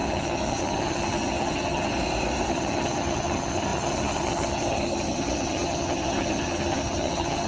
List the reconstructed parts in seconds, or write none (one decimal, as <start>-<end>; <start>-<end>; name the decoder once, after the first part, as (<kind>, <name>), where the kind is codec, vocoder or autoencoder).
0.0-1.9 (vocoder, HiFi-GAN); 2.5-7.5